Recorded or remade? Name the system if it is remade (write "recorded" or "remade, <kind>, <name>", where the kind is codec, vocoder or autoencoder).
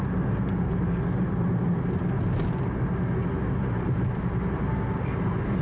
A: recorded